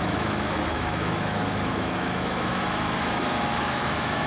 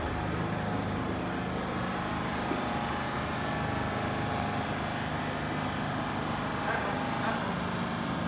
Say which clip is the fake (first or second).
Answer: first